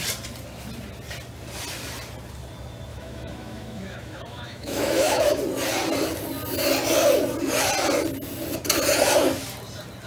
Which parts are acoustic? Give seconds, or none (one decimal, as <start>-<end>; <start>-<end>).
0.0-2.9; 5.4-10.1